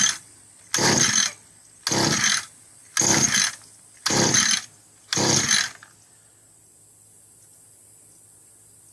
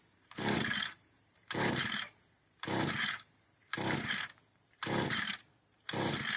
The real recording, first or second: first